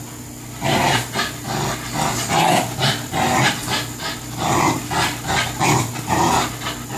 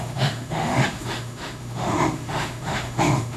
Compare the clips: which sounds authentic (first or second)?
first